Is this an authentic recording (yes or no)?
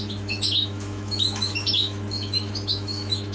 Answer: no